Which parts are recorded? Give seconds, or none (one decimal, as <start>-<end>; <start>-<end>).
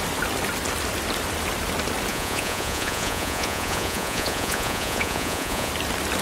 0.0-2.1; 5.7-6.2